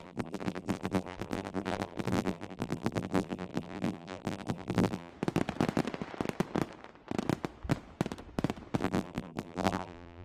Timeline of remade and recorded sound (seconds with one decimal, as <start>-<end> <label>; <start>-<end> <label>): 0.0-5.1 remade; 5.1-8.8 recorded; 8.8-10.2 remade